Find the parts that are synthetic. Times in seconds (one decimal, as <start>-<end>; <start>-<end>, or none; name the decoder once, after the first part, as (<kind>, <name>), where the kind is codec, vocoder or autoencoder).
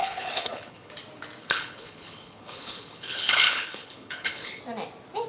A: 0.0-0.9 (codec, HILCodec); 1.4-4.6